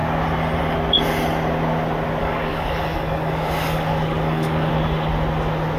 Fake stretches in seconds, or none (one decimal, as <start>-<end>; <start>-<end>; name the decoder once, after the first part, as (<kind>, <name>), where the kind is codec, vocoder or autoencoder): 2.2-4.7 (codec, DAC)